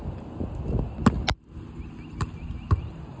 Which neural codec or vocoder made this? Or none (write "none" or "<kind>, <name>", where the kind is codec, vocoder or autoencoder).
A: none